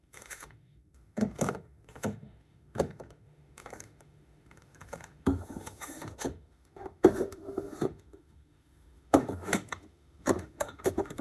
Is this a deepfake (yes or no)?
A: yes